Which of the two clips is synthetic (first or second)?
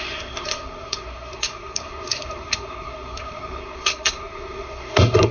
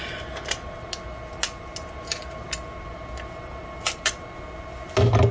first